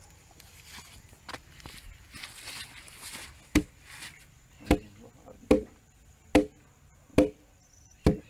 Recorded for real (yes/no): yes